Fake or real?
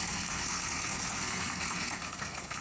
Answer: fake